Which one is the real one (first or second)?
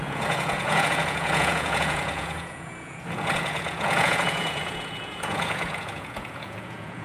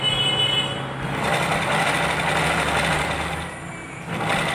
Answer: second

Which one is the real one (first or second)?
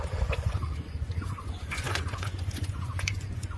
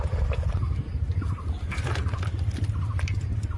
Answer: second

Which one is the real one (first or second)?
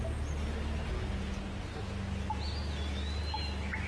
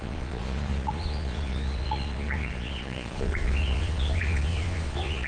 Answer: first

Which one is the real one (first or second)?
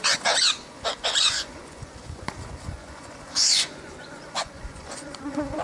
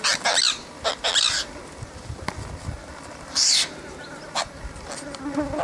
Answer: second